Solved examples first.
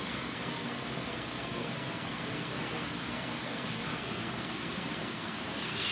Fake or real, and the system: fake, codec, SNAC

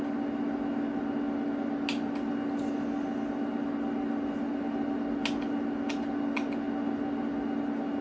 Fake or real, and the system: real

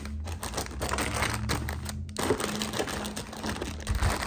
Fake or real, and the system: real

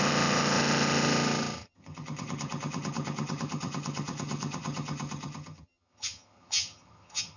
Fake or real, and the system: fake, vocoder, HiFi-GAN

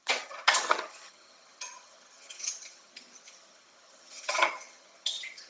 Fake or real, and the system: fake, vocoder, HiFi-GAN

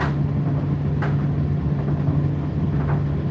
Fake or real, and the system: real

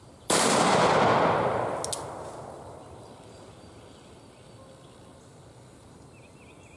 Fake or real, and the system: real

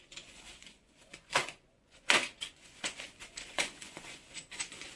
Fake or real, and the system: fake, vocoder, Vocos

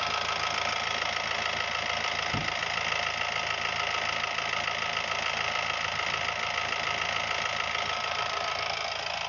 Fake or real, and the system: real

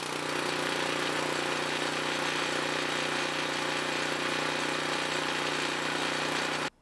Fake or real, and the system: real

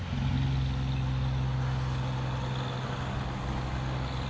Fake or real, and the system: real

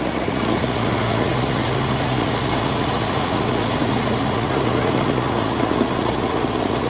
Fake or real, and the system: fake, vocoder, Vocos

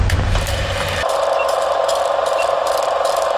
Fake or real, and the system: real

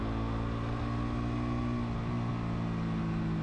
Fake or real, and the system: real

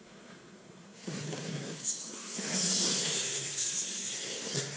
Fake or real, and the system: fake, codec, SNAC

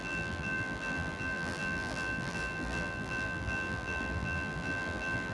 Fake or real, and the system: fake, vocoder, BigVGAN v2